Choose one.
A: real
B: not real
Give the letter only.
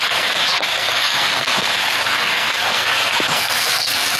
B